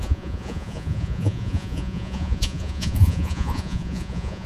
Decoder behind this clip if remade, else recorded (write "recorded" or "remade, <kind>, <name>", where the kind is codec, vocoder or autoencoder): remade, vocoder, Vocos